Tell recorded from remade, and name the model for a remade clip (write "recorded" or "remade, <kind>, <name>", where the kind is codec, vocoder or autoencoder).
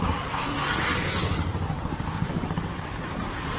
recorded